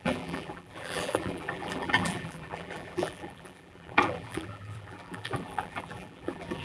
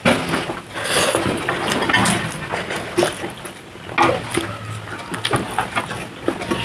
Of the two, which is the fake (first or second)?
first